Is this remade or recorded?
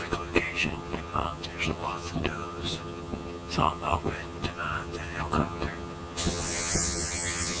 remade